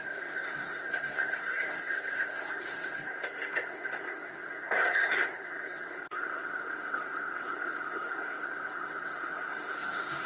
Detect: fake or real fake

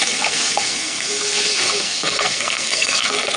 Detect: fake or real fake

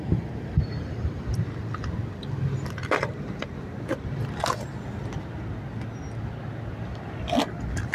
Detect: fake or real real